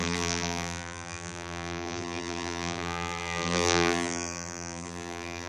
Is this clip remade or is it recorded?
remade